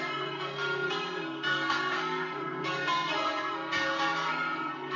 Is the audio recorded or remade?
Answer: remade